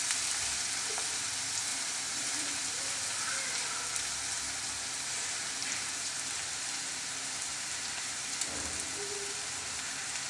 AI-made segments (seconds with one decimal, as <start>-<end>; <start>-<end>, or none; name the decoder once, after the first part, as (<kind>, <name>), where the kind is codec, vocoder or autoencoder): 1.7-2.8 (vocoder, BigVGAN v2); 5.6-8.5